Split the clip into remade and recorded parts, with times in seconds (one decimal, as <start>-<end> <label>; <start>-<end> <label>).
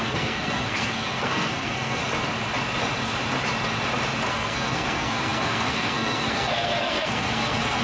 0.0-2.0 remade; 2.0-4.3 recorded; 4.3-7.8 remade